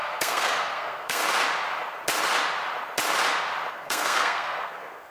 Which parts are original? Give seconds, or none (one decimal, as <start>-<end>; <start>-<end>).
1.2-3.7